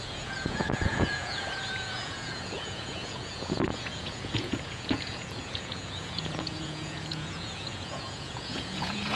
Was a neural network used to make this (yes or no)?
yes